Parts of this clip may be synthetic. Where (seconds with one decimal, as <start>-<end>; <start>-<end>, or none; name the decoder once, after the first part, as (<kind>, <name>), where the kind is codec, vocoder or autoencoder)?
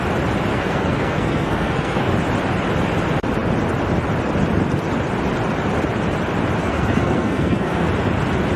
0.5-2.1 (codec, SNAC); 6.6-7.9